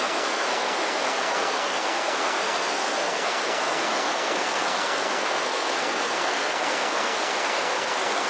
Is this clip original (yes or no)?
no